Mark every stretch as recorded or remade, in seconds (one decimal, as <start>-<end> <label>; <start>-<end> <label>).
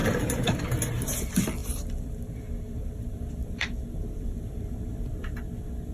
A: 0.0-0.6 remade; 0.6-1.6 recorded; 1.6-5.1 remade; 5.1-5.9 recorded